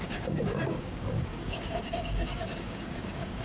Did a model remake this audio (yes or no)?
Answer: yes